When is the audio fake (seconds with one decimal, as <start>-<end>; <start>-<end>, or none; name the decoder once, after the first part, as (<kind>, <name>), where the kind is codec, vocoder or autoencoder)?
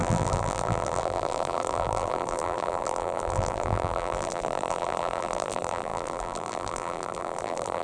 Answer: 0.0-7.8 (vocoder, BigVGAN v2)